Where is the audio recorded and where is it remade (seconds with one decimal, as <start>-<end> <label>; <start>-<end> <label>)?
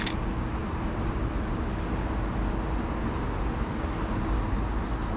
0.0-5.2 recorded